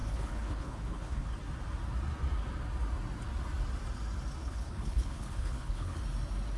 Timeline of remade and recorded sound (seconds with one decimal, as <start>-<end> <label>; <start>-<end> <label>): 0.0-1.3 remade; 1.3-4.4 recorded; 4.4-6.0 remade; 6.0-6.6 recorded